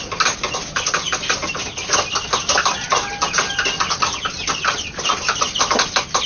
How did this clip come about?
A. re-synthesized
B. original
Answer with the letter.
B